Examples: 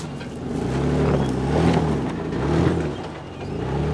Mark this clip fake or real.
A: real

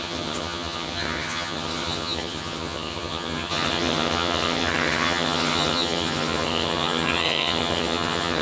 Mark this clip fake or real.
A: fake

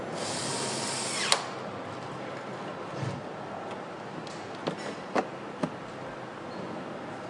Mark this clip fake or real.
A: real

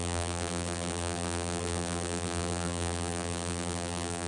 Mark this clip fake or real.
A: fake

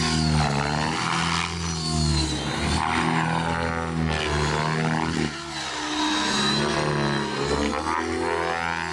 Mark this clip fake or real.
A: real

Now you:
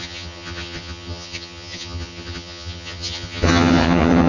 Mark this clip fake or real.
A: fake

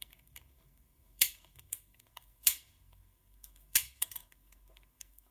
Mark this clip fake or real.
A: fake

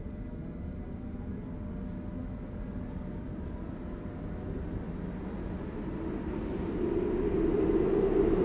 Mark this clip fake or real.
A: real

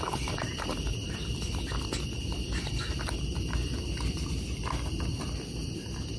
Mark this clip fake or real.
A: real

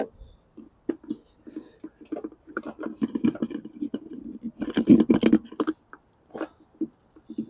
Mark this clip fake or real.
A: real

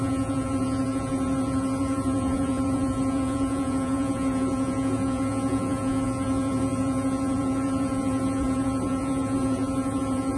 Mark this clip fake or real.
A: fake